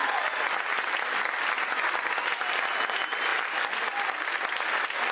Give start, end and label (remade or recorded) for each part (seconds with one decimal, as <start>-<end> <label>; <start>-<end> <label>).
0.0-5.1 recorded